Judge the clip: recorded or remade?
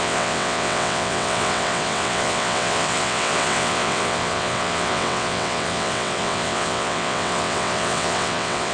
remade